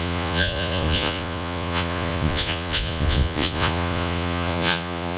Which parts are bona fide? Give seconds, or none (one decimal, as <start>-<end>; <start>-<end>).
none